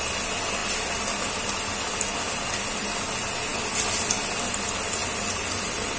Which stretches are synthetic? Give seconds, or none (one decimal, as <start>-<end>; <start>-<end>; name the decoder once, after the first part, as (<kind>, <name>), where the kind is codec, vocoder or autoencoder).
none